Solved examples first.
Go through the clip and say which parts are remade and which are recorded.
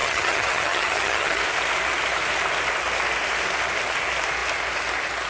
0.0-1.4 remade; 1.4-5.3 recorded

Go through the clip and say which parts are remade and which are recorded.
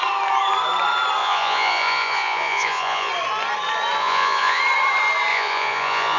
0.0-1.2 recorded; 1.2-3.1 remade; 3.1-4.0 recorded; 4.0-4.6 remade; 4.6-5.3 recorded; 5.3-6.2 remade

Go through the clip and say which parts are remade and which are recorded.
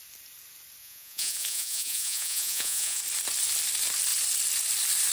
0.0-0.8 recorded; 0.8-3.0 remade; 3.0-5.1 recorded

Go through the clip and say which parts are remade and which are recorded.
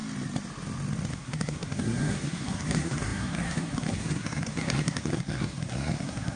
0.0-1.1 recorded; 1.1-6.4 remade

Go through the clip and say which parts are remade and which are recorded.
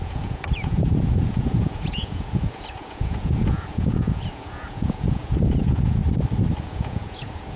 0.0-6.0 remade; 6.0-6.6 recorded; 6.6-7.6 remade